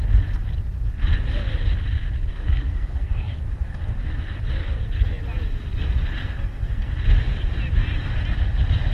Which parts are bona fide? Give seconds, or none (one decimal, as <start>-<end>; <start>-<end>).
0.0-2.3; 3.8-4.6; 5.2-6.2; 6.9-8.9